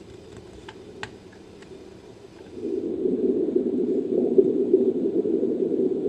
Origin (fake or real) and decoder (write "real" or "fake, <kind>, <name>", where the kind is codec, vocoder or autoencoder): real